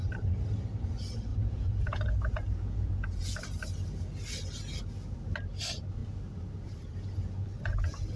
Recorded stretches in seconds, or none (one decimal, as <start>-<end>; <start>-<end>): 0.0-1.3; 3.4-8.2